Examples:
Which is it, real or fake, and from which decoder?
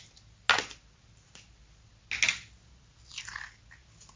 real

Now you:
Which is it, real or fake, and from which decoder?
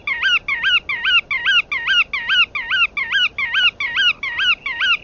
real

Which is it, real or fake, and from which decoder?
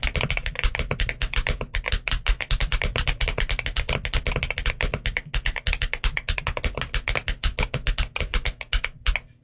real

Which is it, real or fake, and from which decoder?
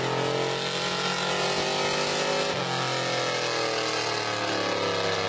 real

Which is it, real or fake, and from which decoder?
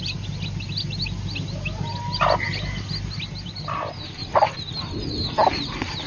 real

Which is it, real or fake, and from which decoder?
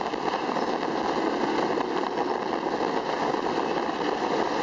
real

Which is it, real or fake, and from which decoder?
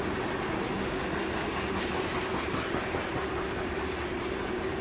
real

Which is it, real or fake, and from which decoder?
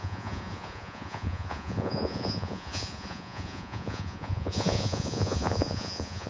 fake, vocoder, Vocos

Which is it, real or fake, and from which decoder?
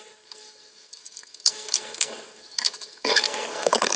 fake, codec, SNAC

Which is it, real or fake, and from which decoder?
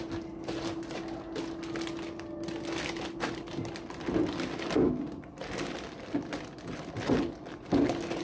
real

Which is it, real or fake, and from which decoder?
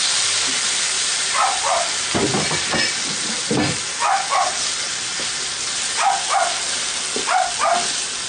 real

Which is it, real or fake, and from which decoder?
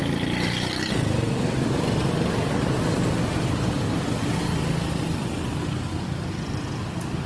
real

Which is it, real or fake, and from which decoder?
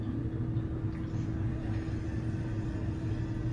real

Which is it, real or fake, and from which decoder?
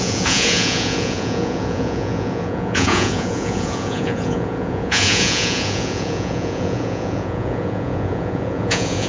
fake, vocoder, Vocos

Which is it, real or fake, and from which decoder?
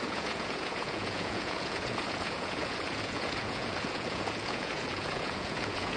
fake, vocoder, Vocos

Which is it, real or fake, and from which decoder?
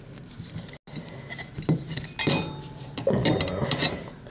real